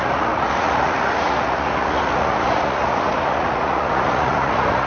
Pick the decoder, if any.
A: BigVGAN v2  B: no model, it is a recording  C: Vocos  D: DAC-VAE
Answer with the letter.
C